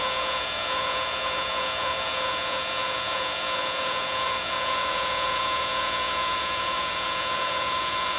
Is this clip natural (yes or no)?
no